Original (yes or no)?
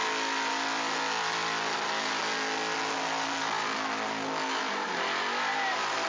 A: yes